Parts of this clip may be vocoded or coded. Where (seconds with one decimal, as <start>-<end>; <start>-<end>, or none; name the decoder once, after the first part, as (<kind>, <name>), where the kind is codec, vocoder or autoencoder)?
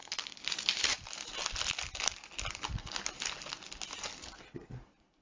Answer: none